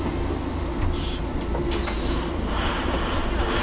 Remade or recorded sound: recorded